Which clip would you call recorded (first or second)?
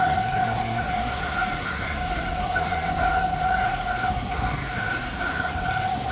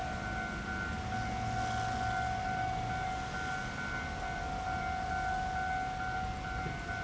second